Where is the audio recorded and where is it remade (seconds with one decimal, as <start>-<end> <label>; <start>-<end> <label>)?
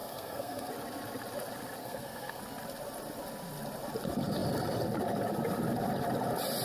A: 0.0-0.7 remade; 0.7-1.8 recorded; 1.8-2.4 remade; 2.4-6.6 recorded